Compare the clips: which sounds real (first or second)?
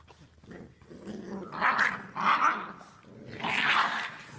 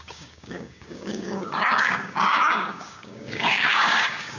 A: first